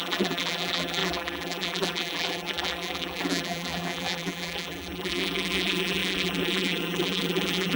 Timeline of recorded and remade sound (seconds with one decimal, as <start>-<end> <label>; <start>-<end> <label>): 0.0-7.8 remade